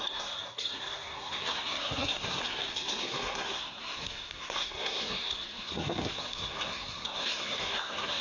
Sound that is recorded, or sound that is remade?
remade